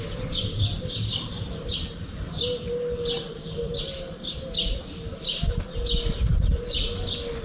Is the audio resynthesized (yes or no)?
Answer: no